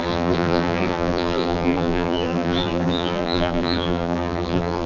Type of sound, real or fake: fake